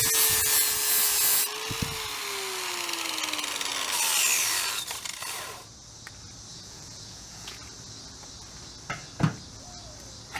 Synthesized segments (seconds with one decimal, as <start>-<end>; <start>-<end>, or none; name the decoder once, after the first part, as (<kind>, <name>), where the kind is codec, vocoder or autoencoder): 6.5-7.6 (vocoder, Vocos)